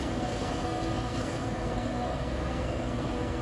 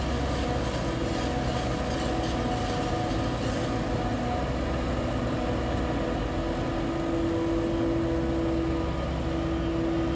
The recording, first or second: second